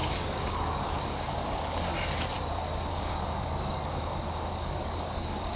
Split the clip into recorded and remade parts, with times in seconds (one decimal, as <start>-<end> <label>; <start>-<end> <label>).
0.0-1.9 remade; 1.9-2.9 recorded; 2.9-5.6 remade